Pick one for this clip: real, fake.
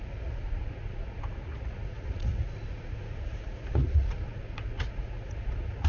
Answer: fake